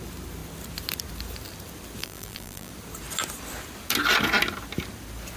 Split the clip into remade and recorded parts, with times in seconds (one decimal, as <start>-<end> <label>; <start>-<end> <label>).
0.0-2.0 recorded; 2.0-2.7 remade; 2.7-5.4 recorded